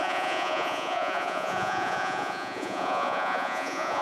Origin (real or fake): fake